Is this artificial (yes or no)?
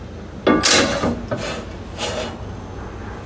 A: no